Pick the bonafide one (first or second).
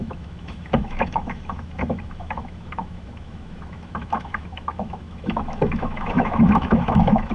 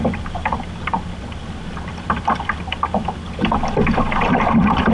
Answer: second